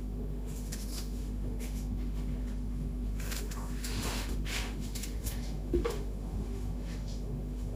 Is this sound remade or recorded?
remade